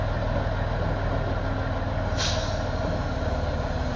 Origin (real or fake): real